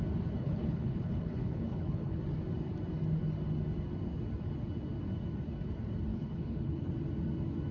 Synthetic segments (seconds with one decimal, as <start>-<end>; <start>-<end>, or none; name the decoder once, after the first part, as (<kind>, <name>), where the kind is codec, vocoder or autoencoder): 0.4-2.2 (codec, HILCodec); 6.1-6.9